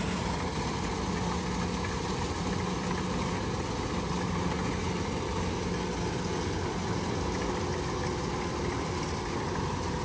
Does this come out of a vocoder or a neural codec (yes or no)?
no